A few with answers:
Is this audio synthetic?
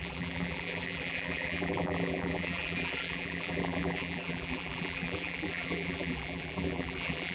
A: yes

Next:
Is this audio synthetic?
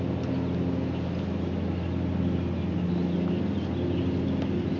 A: no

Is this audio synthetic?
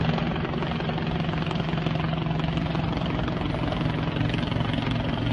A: no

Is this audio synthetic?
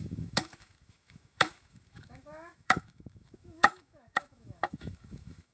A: yes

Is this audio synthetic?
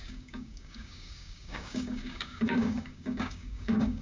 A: yes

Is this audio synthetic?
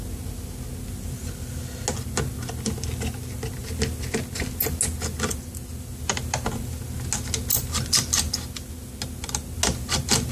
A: no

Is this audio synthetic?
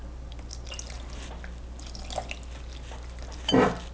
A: no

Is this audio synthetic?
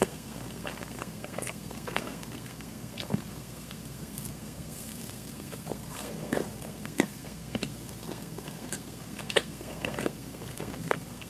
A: yes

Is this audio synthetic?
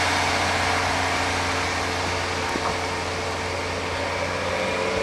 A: no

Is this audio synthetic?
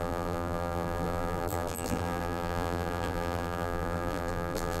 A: yes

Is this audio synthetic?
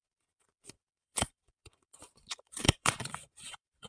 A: yes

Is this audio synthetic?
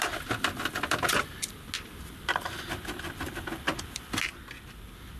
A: no